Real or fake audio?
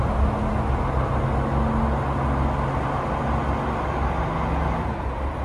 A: real